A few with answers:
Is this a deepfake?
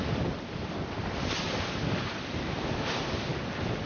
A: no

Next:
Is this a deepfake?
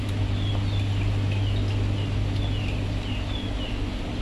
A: no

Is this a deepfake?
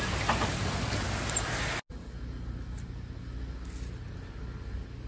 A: no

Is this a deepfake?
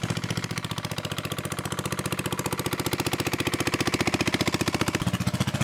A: no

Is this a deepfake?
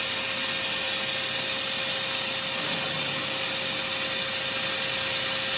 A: no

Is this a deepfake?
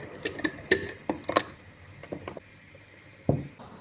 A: no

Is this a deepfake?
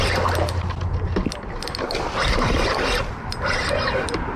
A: no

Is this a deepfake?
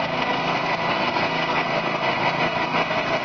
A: yes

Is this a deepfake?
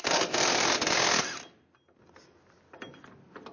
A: no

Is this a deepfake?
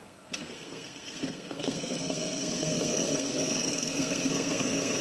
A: yes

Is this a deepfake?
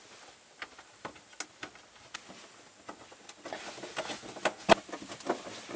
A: no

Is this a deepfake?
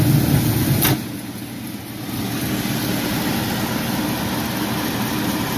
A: no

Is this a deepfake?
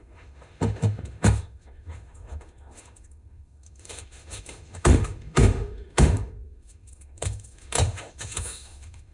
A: yes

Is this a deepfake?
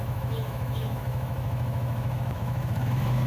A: yes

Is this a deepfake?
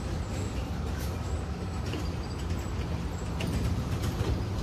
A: no